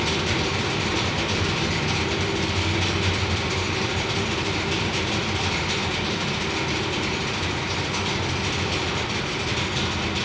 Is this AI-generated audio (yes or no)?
yes